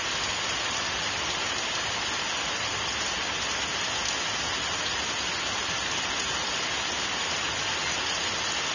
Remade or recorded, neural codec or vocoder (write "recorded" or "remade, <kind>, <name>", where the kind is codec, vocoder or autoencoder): recorded